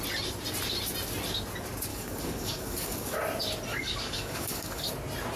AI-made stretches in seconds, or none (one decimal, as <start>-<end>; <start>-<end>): 1.9-3.2; 3.7-4.9